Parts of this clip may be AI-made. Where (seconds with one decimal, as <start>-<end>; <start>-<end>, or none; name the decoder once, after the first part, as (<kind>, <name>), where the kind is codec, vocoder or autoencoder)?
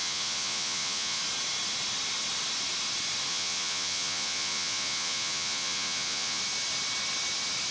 0.0-1.2 (vocoder, Vocos); 3.3-6.4